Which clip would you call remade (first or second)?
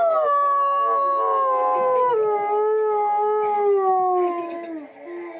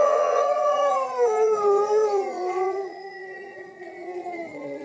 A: second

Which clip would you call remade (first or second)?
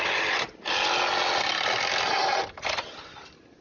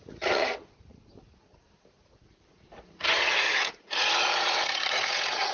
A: second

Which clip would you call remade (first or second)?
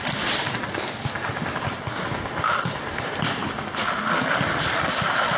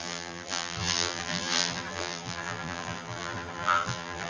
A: second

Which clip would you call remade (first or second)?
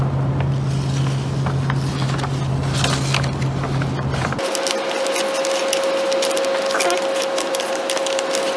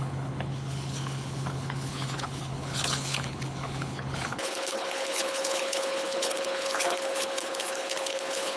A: second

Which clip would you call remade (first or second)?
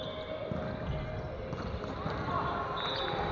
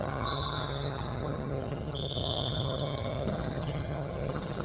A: second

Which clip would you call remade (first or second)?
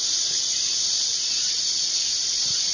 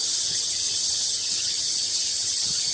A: second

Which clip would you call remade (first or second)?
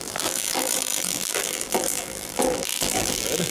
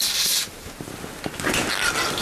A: first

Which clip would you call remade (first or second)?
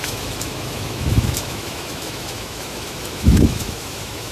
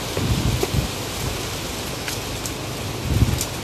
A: first